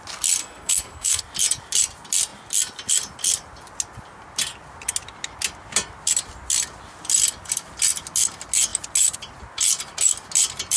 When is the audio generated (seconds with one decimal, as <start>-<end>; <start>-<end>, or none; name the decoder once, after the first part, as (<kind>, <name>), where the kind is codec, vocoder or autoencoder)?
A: 0.4-1.2 (codec, SNAC)